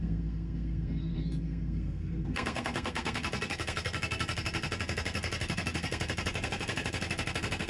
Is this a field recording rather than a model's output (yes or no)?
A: no